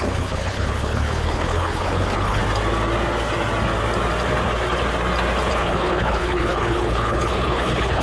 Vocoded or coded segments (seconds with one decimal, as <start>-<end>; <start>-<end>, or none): 0.0-2.4; 5.5-8.0